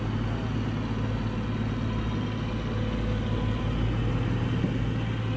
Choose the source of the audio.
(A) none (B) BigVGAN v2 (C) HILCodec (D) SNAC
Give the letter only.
A